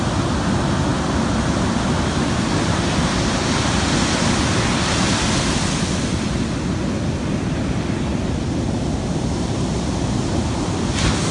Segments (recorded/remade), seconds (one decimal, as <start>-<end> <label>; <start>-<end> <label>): 0.0-11.3 recorded